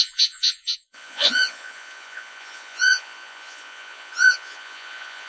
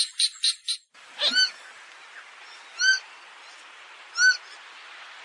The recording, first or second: second